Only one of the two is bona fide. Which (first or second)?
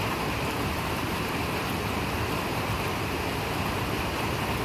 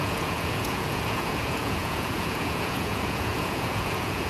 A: first